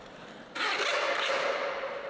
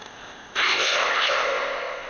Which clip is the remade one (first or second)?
second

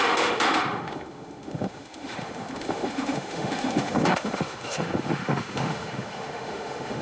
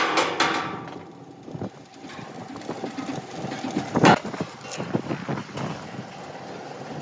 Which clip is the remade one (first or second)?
first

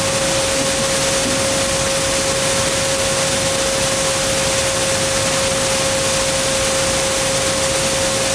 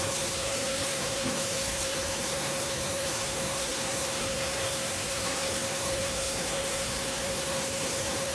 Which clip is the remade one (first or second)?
second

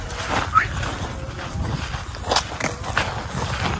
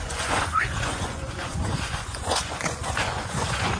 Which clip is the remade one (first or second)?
second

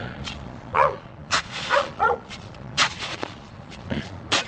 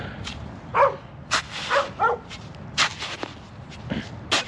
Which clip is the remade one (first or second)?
first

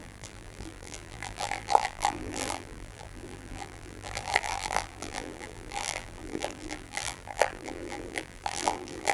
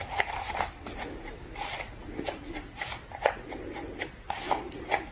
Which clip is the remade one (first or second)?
first